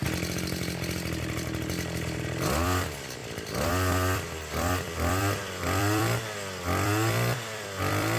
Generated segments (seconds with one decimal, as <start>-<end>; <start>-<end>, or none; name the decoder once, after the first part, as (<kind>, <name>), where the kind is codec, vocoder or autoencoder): 0.0-8.2 (vocoder, BigVGAN v2)